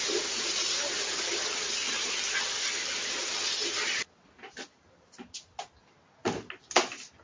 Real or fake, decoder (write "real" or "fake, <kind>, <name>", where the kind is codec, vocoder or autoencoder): real